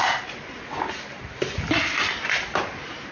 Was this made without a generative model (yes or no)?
yes